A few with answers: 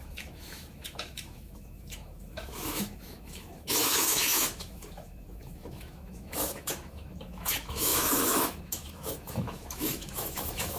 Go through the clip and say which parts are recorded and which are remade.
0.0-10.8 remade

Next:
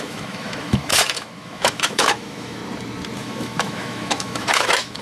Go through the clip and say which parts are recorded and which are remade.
0.0-2.6 remade; 2.6-3.2 recorded; 3.2-5.0 remade

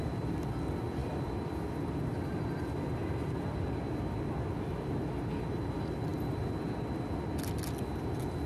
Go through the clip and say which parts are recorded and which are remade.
0.0-8.5 recorded